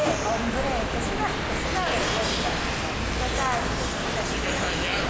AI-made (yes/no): no